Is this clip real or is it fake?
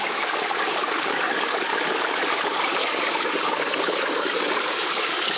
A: fake